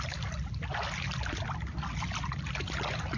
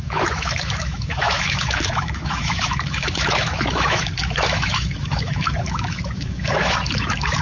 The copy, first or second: second